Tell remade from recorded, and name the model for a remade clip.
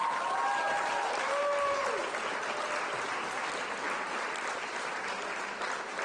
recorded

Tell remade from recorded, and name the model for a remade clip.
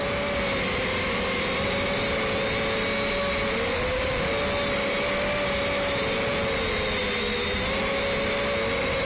recorded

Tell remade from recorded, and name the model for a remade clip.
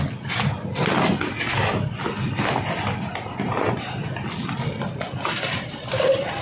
recorded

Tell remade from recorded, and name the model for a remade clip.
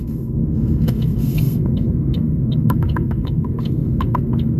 remade, codec, SNAC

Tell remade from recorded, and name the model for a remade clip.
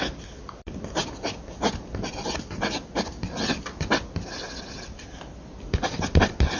recorded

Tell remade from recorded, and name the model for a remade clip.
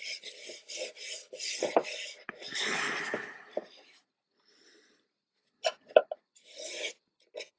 recorded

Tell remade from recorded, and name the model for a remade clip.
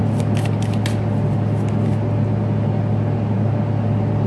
recorded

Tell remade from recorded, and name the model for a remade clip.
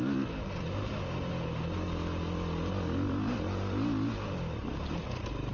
recorded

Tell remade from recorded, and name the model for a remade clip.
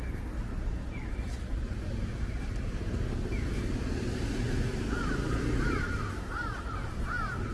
recorded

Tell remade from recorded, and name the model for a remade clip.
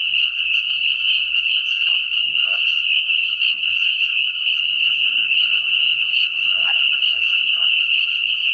remade, codec, SNAC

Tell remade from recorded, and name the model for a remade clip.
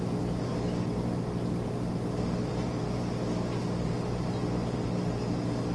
recorded